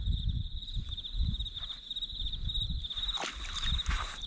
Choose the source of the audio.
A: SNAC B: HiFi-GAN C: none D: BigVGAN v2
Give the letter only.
C